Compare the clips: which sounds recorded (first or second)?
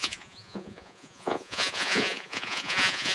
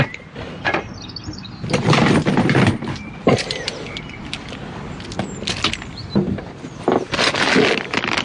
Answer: second